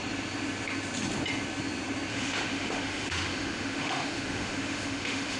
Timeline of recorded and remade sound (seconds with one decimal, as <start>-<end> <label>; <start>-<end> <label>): 0.0-2.1 recorded; 2.1-5.4 remade